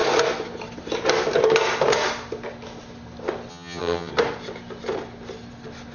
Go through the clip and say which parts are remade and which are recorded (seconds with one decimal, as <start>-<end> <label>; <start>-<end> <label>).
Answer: 0.0-3.5 recorded; 3.5-4.1 remade; 4.1-5.9 recorded